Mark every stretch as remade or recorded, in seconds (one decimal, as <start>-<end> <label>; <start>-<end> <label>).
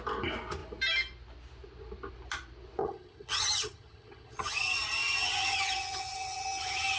0.0-2.8 recorded; 2.8-7.0 remade